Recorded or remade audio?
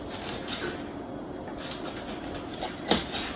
recorded